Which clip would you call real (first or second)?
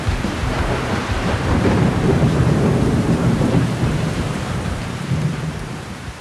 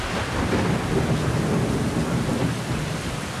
second